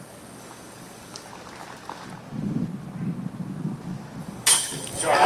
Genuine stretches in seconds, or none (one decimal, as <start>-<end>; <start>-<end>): 1.3-4.2